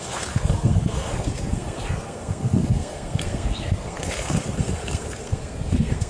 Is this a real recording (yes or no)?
no